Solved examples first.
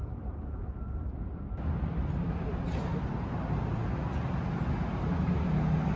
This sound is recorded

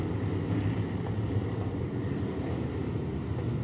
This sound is recorded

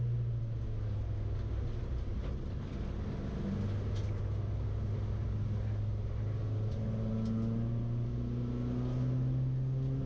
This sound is recorded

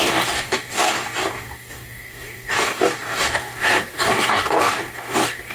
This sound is remade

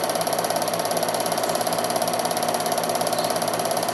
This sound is recorded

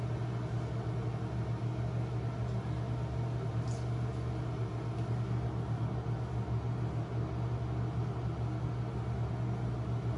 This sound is recorded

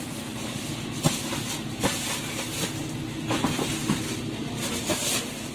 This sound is recorded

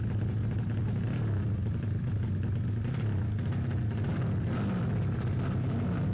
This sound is recorded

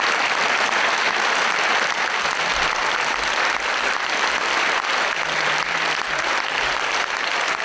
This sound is recorded